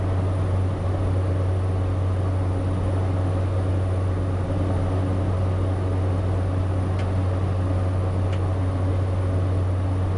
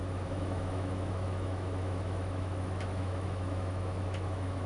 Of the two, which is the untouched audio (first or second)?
first